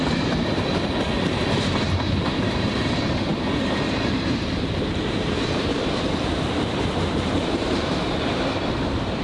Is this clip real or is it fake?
fake